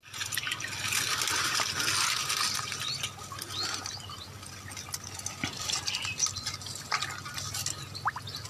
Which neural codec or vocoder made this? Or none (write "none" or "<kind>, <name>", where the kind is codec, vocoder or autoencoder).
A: none